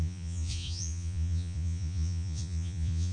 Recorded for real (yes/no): no